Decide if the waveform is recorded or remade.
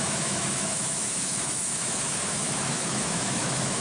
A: remade